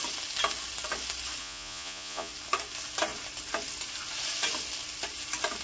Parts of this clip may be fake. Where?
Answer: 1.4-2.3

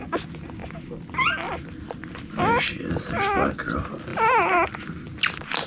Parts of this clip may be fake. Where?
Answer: none

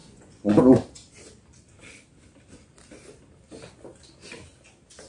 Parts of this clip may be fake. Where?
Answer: 0.0-0.6

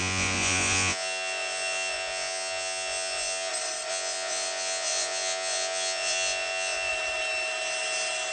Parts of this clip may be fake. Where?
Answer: 0.0-3.5; 3.9-6.9

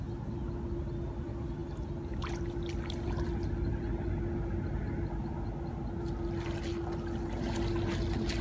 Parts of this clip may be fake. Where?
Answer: none